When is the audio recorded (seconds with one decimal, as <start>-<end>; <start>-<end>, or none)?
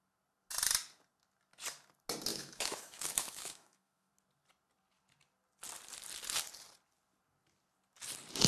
0.0-2.3; 4.1-8.5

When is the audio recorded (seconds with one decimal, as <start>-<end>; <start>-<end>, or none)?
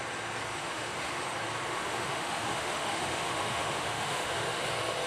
0.0-0.5; 1.1-1.7; 4.6-5.1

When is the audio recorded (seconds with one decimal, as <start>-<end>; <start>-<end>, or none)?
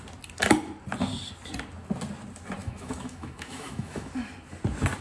0.0-2.6; 4.1-5.0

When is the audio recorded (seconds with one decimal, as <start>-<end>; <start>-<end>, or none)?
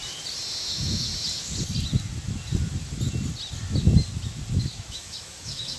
0.0-0.6; 1.1-4.6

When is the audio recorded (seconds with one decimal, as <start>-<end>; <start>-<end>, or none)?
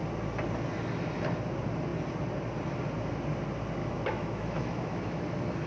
0.0-3.8; 5.2-5.7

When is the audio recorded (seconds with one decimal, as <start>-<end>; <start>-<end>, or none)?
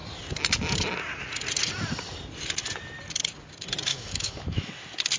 0.0-3.9; 4.7-5.2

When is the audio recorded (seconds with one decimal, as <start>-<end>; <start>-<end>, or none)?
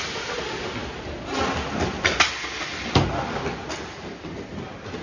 0.0-5.0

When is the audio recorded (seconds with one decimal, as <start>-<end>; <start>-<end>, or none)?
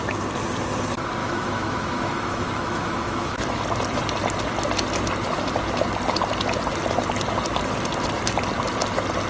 0.0-1.2; 3.6-9.3